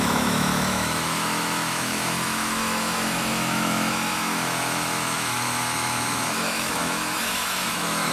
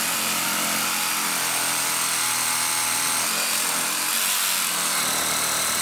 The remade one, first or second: first